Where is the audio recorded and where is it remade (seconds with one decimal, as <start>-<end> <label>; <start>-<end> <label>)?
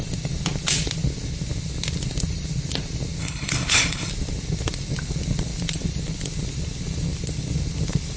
0.0-3.2 recorded; 3.2-4.1 remade; 4.1-8.2 recorded